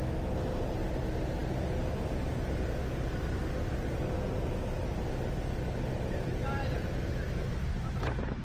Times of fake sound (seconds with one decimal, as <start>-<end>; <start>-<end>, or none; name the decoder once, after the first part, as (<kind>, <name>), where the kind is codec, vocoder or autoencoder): 6.4-8.0 (vocoder, BigVGAN v2)